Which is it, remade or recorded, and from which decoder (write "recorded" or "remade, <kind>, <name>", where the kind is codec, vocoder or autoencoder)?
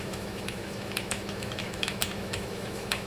remade, autoencoder, DAC-VAE